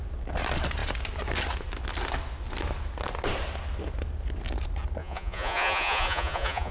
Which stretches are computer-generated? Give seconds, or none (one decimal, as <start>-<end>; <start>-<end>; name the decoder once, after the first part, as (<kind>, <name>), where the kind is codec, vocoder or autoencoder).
5.0-6.7 (vocoder, Vocos)